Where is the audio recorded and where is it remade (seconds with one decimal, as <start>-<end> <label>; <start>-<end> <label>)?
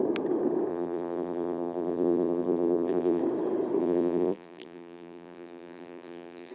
0.0-0.7 recorded; 0.7-3.2 remade; 3.2-3.8 recorded; 3.8-6.5 remade